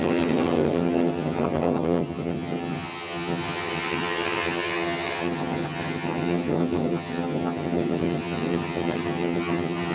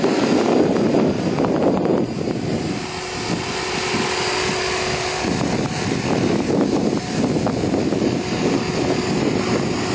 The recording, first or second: second